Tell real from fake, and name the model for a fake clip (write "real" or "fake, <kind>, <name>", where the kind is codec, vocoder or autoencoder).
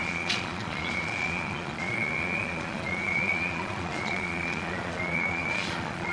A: fake, vocoder, Vocos